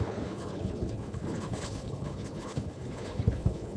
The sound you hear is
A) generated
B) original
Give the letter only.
A